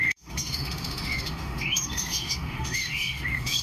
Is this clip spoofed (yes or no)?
yes